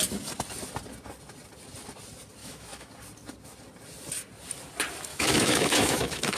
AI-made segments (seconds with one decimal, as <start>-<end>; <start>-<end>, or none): 2.4-2.9; 5.1-6.4